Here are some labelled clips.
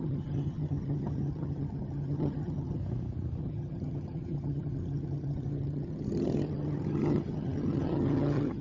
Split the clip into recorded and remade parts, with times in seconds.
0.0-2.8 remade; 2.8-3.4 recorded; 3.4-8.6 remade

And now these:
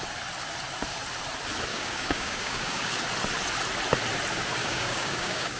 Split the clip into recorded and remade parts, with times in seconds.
0.0-1.7 recorded; 1.7-3.0 remade; 3.0-4.6 recorded; 4.6-5.6 remade

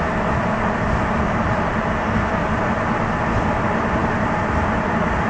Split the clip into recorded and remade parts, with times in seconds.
0.0-5.3 recorded

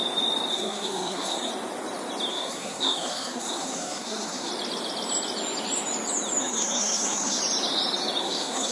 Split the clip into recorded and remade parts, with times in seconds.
0.0-0.5 recorded; 0.5-1.5 remade; 1.5-2.3 recorded; 2.3-4.5 remade; 4.5-6.4 recorded; 6.4-7.4 remade; 7.4-8.2 recorded; 8.2-8.7 remade

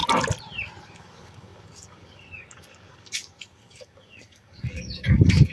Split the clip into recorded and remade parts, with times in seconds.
0.0-0.8 recorded; 0.8-5.5 remade